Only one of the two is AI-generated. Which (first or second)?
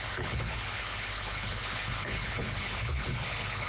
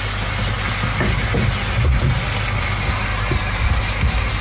first